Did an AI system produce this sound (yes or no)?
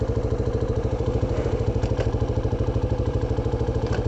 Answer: yes